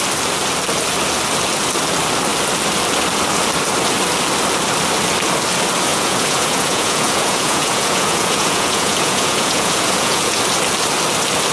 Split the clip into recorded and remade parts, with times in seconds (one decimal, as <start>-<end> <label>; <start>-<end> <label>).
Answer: 0.0-5.9 recorded; 5.9-10.4 remade; 10.4-11.5 recorded